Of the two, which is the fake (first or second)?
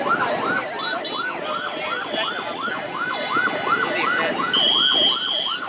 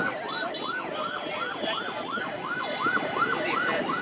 second